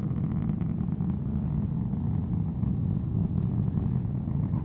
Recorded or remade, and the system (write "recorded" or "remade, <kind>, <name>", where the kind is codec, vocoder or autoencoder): recorded